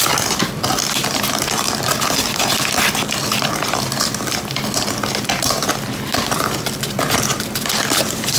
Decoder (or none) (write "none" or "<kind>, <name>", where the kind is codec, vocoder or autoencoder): vocoder, BigVGAN v2